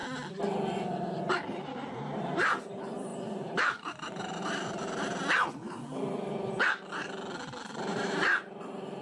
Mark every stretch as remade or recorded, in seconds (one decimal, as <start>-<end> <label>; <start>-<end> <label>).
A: 0.0-1.6 recorded; 1.6-5.2 remade; 5.2-7.8 recorded; 7.8-9.0 remade